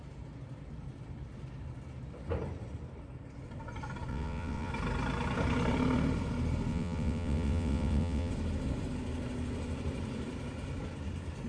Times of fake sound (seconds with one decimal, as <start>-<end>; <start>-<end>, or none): 4.1-4.7; 6.7-8.3